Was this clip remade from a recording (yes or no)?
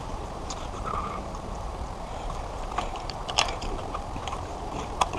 yes